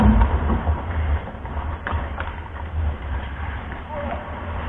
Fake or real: fake